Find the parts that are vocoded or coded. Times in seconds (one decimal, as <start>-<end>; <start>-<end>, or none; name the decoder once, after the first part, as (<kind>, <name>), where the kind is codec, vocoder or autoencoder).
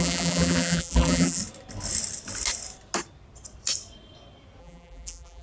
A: 0.0-1.4 (vocoder, BigVGAN v2); 4.6-5.4